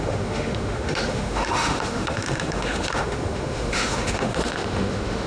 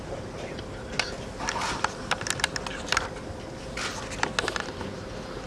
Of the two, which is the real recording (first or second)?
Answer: second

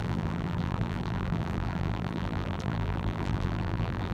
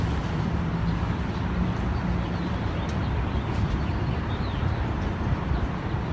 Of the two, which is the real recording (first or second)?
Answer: second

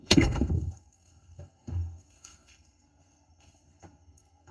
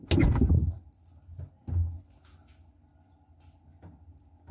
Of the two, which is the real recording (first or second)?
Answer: second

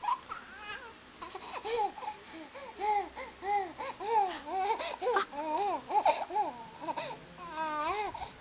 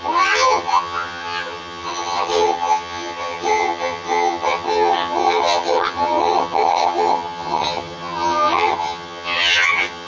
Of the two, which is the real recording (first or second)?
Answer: first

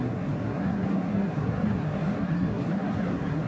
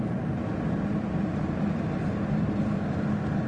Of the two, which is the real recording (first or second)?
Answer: second